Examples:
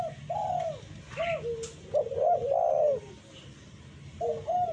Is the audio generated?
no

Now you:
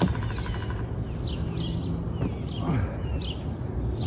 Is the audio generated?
no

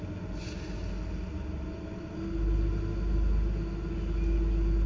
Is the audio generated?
no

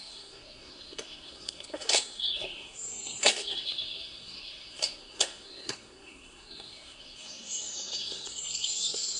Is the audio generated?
yes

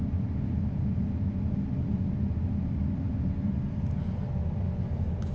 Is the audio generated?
no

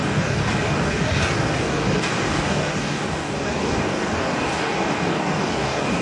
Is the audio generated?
yes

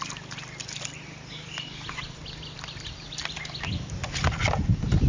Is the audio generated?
no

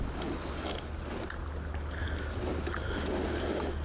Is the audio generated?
no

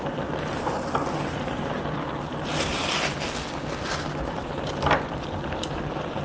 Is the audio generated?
no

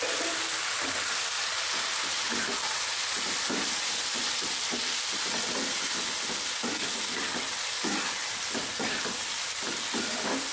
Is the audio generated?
no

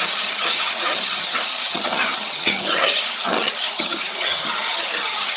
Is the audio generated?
yes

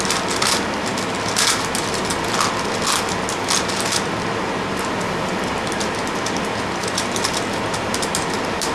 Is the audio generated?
no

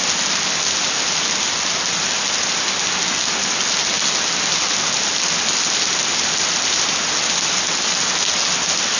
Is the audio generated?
no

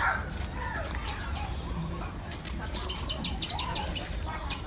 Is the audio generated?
no